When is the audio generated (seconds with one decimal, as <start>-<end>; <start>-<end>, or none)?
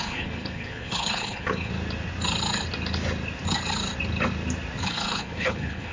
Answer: 0.0-1.7; 4.8-5.9